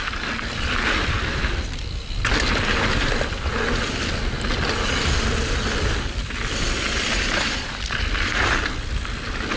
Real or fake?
real